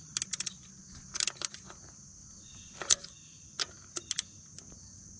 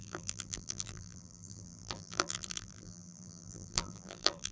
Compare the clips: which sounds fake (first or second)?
second